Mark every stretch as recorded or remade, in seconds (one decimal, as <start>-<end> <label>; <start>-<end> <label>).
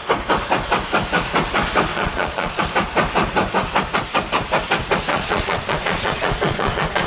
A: 0.0-1.9 recorded; 1.9-2.6 remade; 2.6-5.1 recorded; 5.1-7.1 remade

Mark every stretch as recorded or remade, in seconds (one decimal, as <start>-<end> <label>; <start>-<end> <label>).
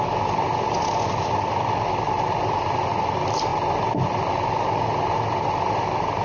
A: 0.0-6.2 recorded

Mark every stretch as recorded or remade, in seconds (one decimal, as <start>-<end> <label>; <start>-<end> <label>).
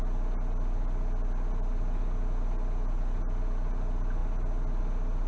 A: 0.0-5.3 recorded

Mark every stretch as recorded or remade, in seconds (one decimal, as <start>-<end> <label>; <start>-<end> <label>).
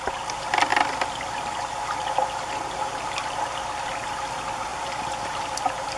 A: 0.0-6.0 recorded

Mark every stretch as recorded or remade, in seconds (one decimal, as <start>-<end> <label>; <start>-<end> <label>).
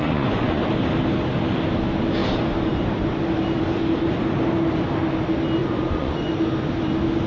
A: 0.0-0.6 remade; 0.6-5.6 recorded; 5.6-6.3 remade; 6.3-7.3 recorded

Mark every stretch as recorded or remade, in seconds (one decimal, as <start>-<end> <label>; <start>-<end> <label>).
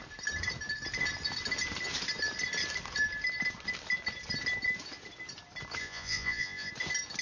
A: 0.0-5.8 recorded; 5.8-6.7 remade; 6.7-7.2 recorded